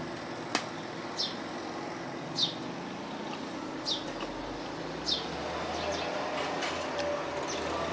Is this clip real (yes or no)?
yes